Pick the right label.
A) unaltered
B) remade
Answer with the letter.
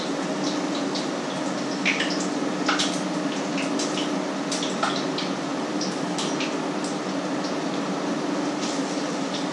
A